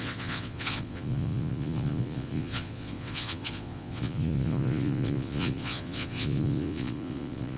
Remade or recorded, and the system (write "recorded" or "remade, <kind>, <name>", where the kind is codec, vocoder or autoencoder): remade, vocoder, Vocos